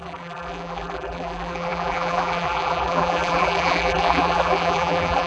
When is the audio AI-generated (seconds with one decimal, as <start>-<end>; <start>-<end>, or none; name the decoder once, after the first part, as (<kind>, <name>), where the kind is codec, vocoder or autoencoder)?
0.0-5.3 (vocoder, BigVGAN v2)